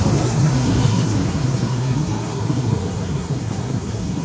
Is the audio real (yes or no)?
no